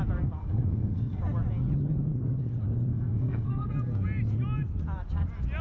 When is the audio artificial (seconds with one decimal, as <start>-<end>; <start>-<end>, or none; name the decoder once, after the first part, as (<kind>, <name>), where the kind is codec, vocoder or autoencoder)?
0.4-1.2 (codec, SNAC); 2.9-3.7